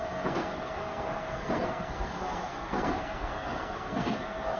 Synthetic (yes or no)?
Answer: yes